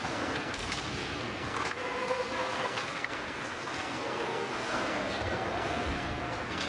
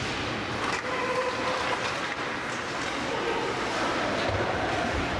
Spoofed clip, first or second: first